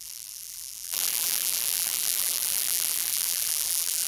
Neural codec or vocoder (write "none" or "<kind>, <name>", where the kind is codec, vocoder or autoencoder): vocoder, BigVGAN v2